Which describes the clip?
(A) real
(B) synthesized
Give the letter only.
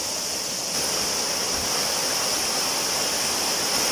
A